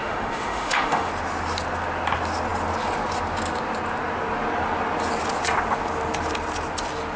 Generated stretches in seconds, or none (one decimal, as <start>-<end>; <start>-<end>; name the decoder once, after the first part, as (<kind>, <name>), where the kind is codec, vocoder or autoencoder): 0.0-1.1 (autoencoder, DAC-VAE)